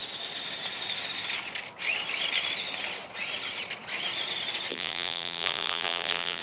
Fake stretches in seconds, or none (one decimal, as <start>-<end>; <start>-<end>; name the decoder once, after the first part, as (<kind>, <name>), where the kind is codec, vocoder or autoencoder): 4.7-6.4 (vocoder, BigVGAN v2)